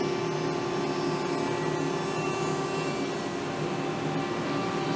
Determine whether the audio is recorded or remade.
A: recorded